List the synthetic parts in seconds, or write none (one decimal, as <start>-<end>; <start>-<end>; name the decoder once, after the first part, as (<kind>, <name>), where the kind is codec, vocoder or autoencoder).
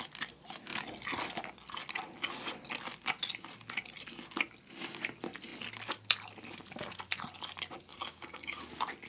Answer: 7.9-8.6 (codec, DAC)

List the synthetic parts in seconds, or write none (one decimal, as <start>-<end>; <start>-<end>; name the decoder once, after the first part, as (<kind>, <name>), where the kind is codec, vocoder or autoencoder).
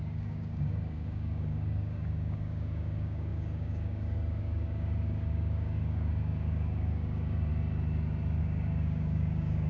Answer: 0.0-7.5 (codec, DAC); 8.4-9.7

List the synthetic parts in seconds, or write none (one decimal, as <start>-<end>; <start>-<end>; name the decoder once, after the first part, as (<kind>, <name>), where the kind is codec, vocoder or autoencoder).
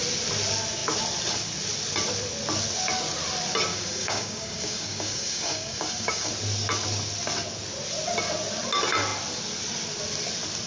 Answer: 3.7-6.3 (codec, DAC)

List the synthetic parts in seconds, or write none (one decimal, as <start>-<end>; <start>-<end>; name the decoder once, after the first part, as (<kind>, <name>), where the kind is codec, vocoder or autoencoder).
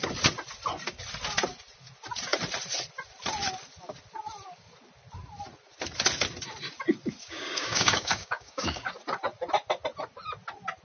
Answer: 7.2-8.9 (codec, DAC)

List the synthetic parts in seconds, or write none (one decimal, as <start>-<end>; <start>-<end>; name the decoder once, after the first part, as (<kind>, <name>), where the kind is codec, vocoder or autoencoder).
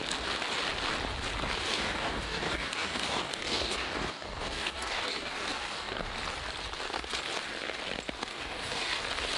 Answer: 1.7-6.1 (codec, DAC); 8.3-9.0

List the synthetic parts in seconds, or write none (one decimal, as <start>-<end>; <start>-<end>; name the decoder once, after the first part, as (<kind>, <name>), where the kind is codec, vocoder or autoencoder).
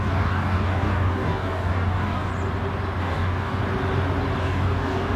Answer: 0.0-2.3 (codec, DAC); 3.0-3.6; 4.4-5.2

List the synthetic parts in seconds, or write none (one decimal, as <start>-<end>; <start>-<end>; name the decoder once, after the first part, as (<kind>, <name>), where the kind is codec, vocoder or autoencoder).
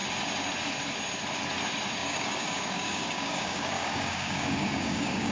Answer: 2.0-5.3 (codec, DAC)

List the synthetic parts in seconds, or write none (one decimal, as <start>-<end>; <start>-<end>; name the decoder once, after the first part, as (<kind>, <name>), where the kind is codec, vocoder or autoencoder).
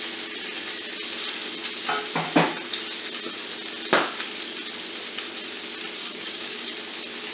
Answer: 6.0-6.7 (codec, DAC)